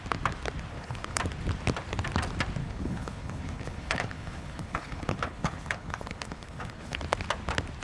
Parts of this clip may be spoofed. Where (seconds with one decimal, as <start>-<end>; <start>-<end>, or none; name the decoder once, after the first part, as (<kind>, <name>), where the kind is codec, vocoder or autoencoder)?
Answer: 0.7-1.2 (codec, HILCodec); 2.6-7.0